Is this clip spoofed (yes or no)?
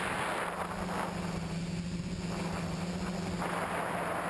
no